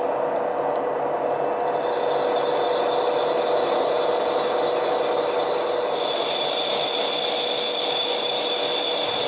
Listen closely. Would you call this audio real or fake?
real